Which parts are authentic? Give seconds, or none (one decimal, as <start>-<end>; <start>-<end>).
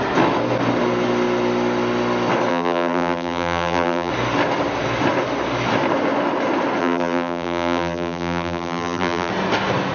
0.0-2.5; 4.1-6.8; 9.3-9.9